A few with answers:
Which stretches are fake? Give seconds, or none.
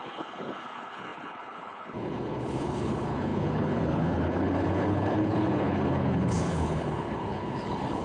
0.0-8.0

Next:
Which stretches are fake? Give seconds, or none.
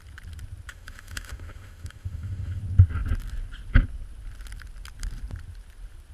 0.7-2.6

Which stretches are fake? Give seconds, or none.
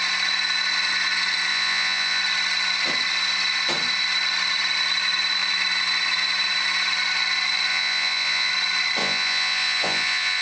1.5-2.2; 7.7-8.5; 9.0-10.4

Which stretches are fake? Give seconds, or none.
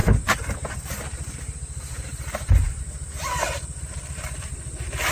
none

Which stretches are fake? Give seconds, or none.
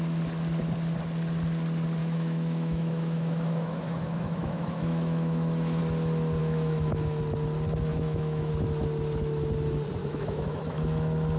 2.0-5.8; 6.4-7.2; 7.9-8.5; 10.0-10.6